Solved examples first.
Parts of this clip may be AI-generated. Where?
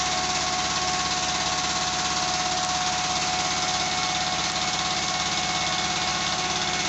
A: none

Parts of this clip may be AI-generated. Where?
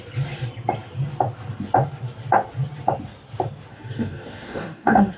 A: 3.7-5.2 (codec, DAC)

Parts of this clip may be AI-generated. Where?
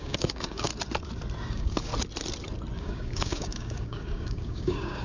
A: 0.0-0.7 (codec, DAC); 1.5-1.9; 2.8-5.0